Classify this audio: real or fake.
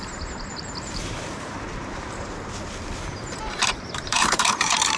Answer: fake